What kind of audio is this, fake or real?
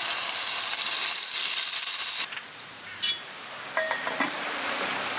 real